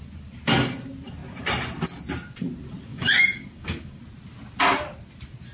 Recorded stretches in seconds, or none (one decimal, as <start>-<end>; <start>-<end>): 0.0-2.9; 4.0-5.5